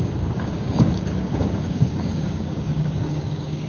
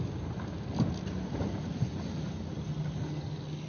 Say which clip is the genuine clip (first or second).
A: second